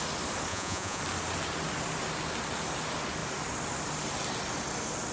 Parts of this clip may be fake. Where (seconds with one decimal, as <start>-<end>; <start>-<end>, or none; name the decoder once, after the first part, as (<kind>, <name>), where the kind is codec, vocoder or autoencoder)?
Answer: 0.5-1.0 (vocoder, Vocos)